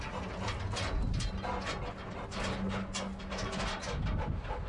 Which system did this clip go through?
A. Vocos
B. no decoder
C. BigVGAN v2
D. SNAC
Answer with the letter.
B